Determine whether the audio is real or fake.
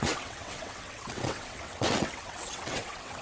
fake